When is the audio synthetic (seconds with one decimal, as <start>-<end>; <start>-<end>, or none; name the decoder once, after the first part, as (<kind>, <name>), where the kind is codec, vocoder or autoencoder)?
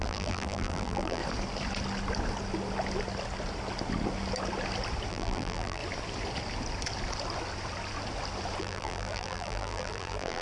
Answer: 0.0-1.2 (vocoder, BigVGAN v2); 5.1-5.8; 8.6-10.4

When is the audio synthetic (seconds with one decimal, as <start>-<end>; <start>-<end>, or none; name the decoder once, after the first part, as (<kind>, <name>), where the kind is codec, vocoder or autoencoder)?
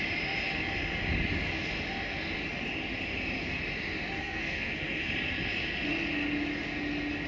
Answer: 4.2-5.1 (codec, SNAC)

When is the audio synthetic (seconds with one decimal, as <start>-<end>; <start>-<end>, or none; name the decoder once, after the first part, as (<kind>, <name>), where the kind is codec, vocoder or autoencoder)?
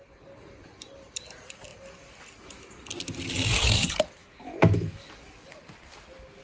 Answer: 4.2-5.1 (autoencoder, DAC-VAE)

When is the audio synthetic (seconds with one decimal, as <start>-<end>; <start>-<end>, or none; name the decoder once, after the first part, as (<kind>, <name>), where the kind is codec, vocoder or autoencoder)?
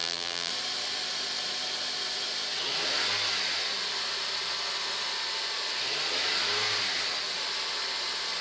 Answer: 0.0-0.5 (vocoder, BigVGAN v2)